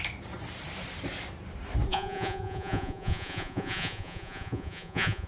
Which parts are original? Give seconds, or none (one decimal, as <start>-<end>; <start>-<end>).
0.0-1.9